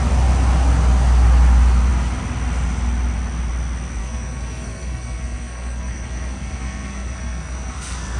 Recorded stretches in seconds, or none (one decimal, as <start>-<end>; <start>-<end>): 0.0-4.0